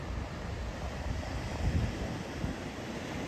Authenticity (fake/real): real